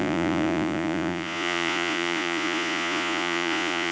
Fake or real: fake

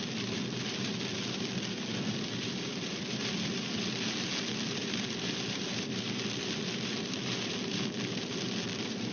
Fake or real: real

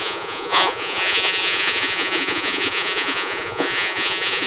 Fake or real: fake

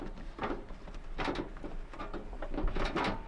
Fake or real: real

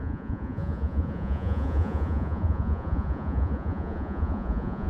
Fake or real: fake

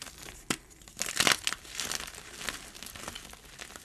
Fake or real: real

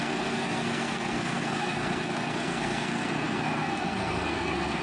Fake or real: fake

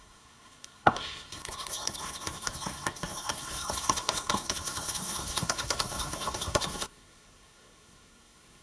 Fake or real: fake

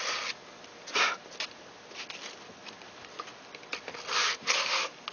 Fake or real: real